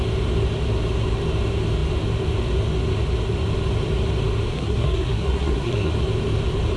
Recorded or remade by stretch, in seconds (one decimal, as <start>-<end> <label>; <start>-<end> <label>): 0.0-4.5 recorded; 4.5-5.9 remade; 5.9-6.8 recorded